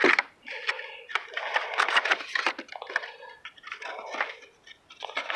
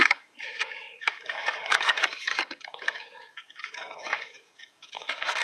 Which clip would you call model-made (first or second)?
second